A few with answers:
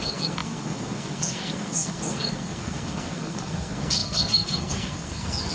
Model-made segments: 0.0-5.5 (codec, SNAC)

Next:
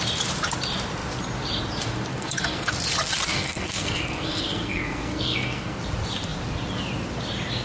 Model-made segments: 2.1-2.7 (codec, SNAC); 3.3-5.8

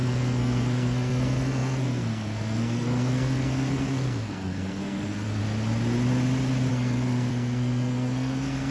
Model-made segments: 0.0-5.4 (codec, SNAC); 6.7-8.7